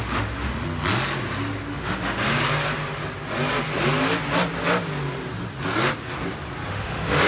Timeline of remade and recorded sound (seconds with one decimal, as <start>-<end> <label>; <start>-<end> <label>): 0.0-0.5 remade; 0.5-1.7 recorded; 1.7-2.3 remade; 2.3-6.7 recorded; 6.7-7.3 remade